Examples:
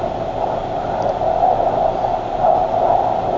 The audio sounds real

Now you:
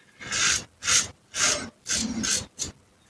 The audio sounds real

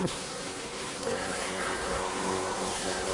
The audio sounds fake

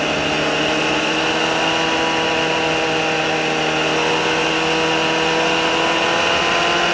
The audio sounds real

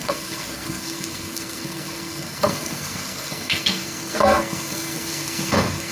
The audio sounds fake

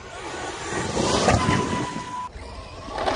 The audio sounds real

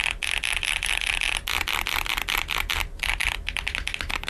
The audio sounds real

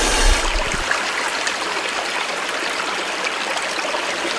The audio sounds real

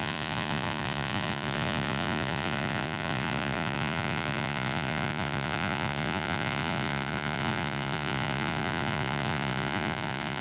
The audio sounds fake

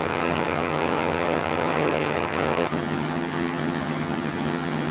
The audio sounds fake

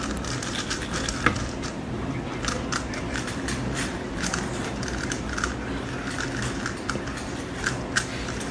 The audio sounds real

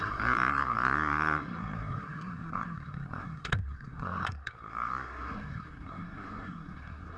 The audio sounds fake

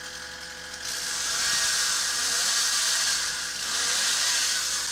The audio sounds real